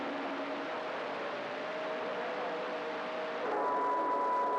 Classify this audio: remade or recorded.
recorded